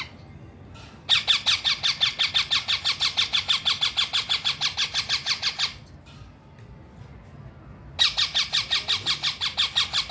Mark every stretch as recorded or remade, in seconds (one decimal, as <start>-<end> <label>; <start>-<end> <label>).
0.0-10.1 recorded